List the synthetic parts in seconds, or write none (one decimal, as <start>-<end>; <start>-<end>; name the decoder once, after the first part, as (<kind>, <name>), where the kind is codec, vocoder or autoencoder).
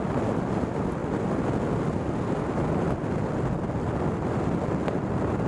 none